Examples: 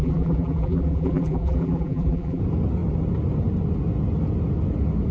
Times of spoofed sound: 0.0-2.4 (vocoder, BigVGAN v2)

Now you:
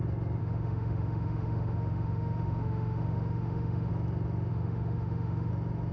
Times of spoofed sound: 0.4-3.9 (autoencoder, DAC-VAE); 4.5-5.5

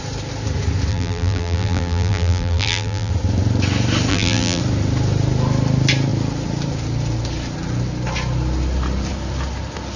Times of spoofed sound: 0.9-3.1 (vocoder, BigVGAN v2); 4.1-4.6

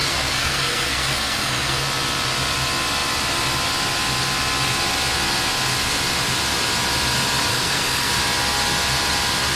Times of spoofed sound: 0.0-1.8 (codec, SNAC); 7.5-8.1